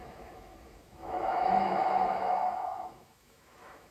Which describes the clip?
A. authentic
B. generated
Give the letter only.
B